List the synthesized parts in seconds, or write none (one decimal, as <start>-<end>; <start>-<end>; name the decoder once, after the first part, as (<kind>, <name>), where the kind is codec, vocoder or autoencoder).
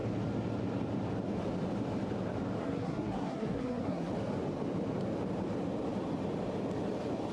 2.6-4.1 (codec, SNAC)